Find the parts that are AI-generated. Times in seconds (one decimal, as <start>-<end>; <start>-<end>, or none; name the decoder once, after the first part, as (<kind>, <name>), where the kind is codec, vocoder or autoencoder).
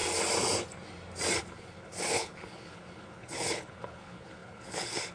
1.4-5.1 (codec, HILCodec)